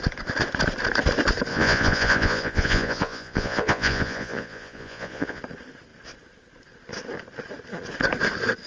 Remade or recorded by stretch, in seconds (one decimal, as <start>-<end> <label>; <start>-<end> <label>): 0.0-1.5 recorded; 1.5-5.4 remade; 5.4-8.7 recorded